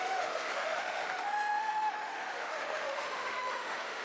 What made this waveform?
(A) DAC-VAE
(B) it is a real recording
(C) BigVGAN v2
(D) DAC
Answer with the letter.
A